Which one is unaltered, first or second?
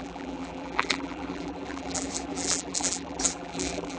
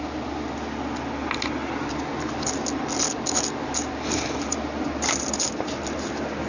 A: second